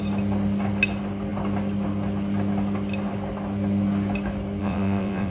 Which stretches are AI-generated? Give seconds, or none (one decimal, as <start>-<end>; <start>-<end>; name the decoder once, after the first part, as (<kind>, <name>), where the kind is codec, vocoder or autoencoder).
4.6-5.3 (vocoder, WaveNeXt)